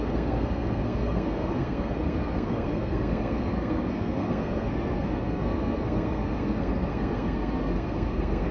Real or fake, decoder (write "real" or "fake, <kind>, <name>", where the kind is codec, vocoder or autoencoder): fake, codec, SNAC